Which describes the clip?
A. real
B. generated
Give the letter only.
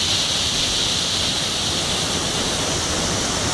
A